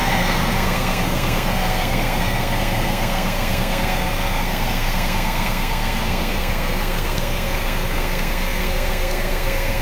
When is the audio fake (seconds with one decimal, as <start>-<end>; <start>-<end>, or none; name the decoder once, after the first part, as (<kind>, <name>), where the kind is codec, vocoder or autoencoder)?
0.0-9.8 (codec, SNAC)